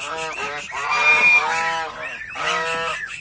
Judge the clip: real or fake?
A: real